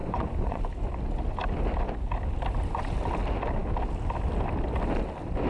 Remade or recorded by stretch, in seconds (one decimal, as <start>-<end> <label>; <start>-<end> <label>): 0.0-0.6 remade; 0.6-5.5 recorded